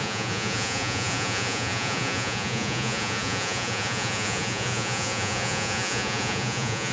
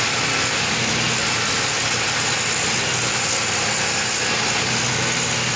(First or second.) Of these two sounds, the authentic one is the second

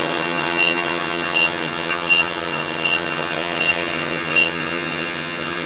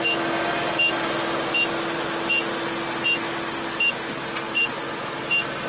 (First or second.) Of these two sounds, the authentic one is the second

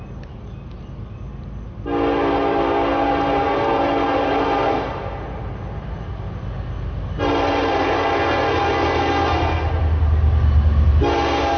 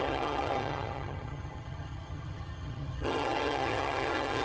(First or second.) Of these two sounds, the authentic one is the first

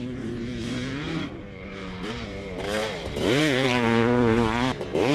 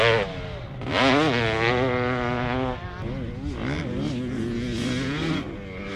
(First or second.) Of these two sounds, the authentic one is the second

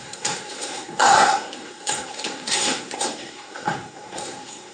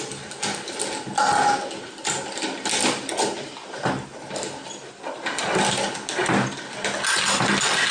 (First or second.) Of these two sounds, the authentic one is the second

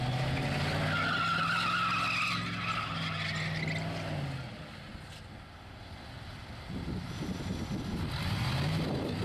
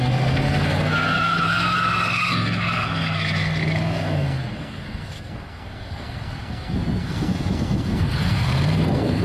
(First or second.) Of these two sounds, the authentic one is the first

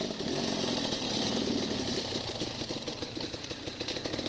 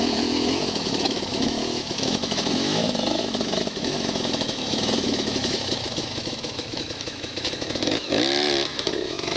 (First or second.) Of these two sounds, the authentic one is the first